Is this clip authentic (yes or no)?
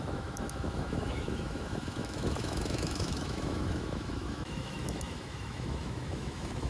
no